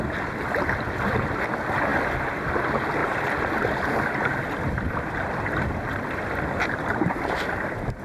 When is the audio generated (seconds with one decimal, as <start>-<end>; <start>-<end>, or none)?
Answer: 0.0-1.9; 2.6-8.0